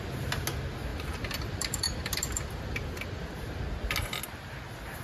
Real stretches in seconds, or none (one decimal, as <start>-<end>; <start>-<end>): 0.0-0.9; 3.6-5.0

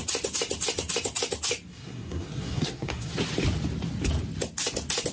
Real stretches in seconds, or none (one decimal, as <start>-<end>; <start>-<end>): 0.0-1.7; 3.1-5.1

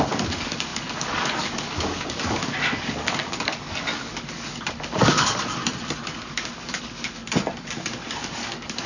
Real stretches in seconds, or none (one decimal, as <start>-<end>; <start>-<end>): 5.6-6.3; 7.2-7.8

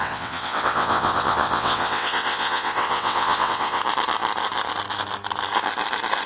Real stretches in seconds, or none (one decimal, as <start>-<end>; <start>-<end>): 3.8-6.3

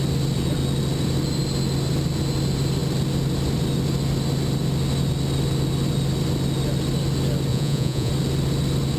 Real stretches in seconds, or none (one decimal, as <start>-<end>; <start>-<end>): 0.0-7.5; 8.1-9.0